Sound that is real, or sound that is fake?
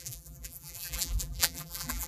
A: fake